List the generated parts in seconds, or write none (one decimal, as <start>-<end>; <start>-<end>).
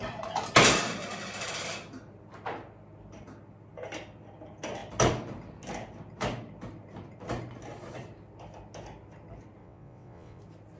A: 9.6-10.4